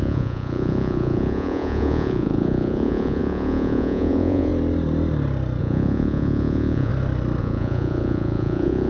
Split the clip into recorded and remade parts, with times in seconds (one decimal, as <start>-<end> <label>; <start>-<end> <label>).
0.0-4.5 remade; 4.5-5.6 recorded; 5.6-6.9 remade; 6.9-7.4 recorded; 7.4-8.9 remade